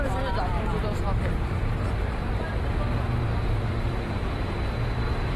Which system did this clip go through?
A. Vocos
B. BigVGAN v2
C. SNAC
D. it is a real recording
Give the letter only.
B